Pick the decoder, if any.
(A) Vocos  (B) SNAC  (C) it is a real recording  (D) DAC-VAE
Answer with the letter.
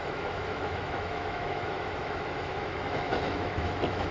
D